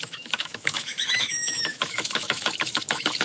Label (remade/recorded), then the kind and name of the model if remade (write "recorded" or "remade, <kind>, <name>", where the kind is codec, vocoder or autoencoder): remade, autoencoder, DAC-VAE